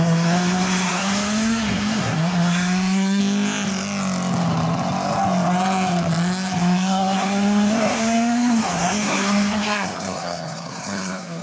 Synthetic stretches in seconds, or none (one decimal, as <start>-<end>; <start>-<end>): 0.0-3.2; 6.6-11.4